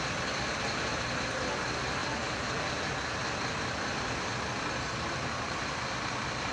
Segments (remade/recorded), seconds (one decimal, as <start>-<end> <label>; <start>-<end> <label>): 0.0-2.0 recorded; 2.0-2.9 remade; 2.9-6.5 recorded